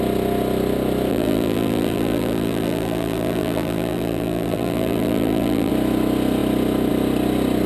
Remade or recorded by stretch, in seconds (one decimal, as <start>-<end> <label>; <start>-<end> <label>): 0.0-1.1 recorded; 1.1-5.7 remade; 5.7-7.7 recorded